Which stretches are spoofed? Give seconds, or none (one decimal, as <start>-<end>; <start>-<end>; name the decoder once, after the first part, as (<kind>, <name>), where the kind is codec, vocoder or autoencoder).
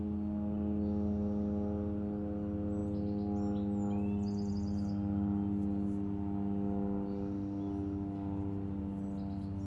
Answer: none